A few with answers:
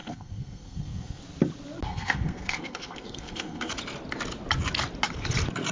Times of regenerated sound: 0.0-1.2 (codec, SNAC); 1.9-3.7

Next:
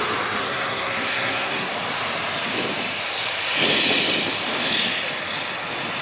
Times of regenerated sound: 0.4-1.7 (codec, SNAC)

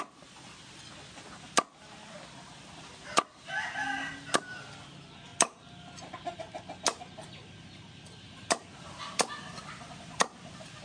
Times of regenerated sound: none

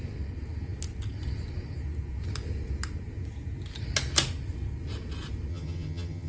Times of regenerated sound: 5.5-6.3 (vocoder, HiFi-GAN)

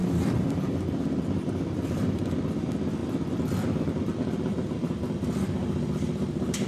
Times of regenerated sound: 0.0-2.3 (vocoder, BigVGAN v2)

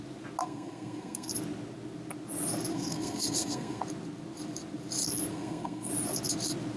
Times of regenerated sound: 0.4-1.3 (codec, SNAC); 2.7-3.8; 5.3-5.9